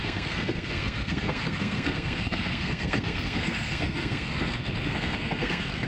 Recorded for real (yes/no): no